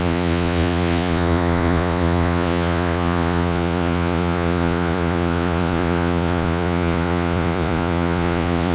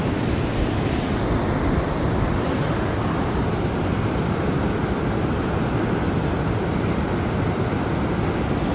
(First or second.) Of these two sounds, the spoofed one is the first